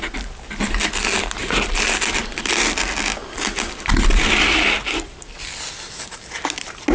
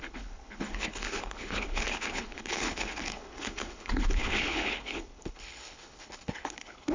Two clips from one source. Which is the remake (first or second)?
second